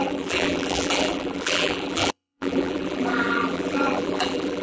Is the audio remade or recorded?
remade